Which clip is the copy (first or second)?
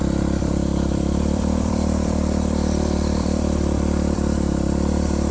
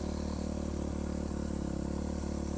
first